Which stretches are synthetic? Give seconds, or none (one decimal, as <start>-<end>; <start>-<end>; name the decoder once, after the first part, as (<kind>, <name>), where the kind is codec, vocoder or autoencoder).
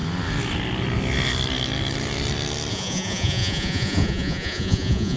2.7-5.2 (vocoder, Vocos)